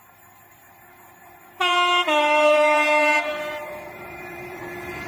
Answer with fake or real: fake